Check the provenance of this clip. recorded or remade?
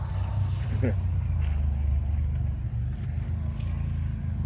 recorded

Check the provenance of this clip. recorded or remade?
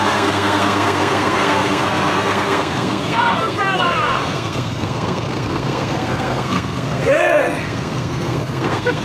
remade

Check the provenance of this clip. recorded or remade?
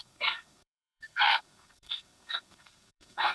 remade